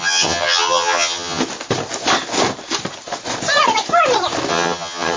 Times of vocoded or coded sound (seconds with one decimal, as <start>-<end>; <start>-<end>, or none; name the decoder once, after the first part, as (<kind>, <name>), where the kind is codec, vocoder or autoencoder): 0.0-1.4 (vocoder, HiFi-GAN); 4.5-5.2